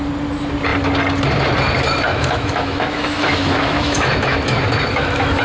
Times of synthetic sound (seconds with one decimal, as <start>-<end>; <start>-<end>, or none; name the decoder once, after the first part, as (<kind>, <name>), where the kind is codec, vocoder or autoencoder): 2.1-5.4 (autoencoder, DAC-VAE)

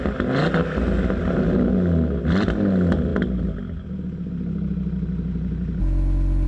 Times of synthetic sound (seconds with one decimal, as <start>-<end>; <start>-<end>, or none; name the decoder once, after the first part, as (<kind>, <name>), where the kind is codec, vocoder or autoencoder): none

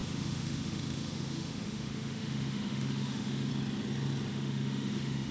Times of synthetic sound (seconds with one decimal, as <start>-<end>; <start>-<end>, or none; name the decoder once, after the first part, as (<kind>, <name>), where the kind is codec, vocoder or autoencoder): 0.0-3.5 (autoencoder, DAC-VAE); 4.3-5.3

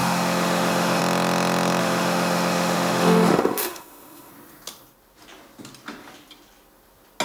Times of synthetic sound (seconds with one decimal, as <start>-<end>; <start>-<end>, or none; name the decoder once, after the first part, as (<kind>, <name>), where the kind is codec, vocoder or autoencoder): 0.0-1.0 (autoencoder, DAC-VAE); 1.8-4.3